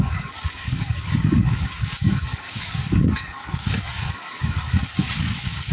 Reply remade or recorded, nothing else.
remade